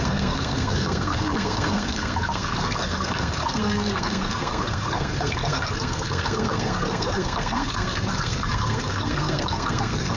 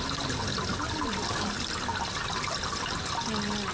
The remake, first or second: first